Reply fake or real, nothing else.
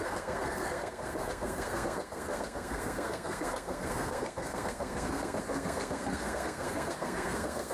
fake